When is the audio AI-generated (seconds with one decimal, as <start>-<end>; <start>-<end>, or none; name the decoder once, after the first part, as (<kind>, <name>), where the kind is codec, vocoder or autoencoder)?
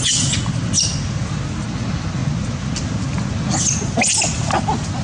none